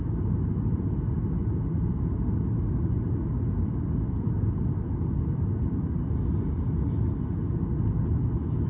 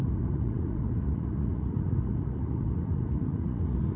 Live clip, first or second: first